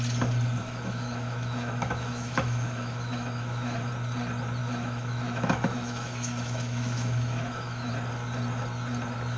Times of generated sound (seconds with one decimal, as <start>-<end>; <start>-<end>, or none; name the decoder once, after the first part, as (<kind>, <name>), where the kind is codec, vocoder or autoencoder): 0.6-3.9 (autoencoder, DAC-VAE); 4.6-7.9

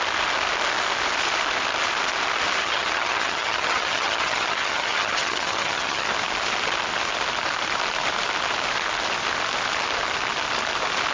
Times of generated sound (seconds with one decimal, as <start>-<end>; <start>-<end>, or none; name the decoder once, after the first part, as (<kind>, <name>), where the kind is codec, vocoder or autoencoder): 2.6-6.1 (vocoder, HiFi-GAN)

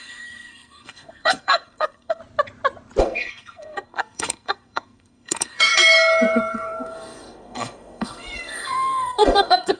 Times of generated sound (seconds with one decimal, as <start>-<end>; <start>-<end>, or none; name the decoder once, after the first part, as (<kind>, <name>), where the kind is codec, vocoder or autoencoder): 0.0-2.2 (codec, SNAC); 3.0-9.8

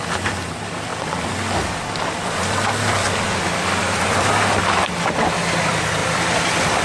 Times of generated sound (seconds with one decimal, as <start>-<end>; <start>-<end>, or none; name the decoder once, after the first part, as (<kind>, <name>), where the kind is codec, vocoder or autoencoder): 0.9-4.3 (vocoder, BigVGAN v2); 6.0-6.8

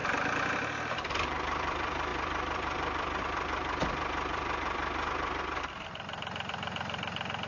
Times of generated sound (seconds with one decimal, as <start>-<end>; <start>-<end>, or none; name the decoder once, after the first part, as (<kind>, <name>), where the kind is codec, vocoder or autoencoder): 0.5-7.5 (vocoder, BigVGAN v2)

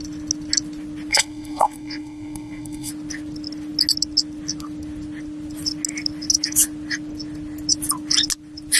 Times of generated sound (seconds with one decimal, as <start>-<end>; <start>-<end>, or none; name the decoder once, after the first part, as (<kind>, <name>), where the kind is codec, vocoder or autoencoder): 1.1-2.9 (codec, SNAC)

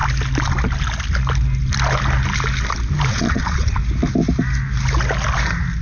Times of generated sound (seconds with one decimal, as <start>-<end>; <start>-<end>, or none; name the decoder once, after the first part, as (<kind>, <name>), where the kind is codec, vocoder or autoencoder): 3.1-3.8 (vocoder, Vocos)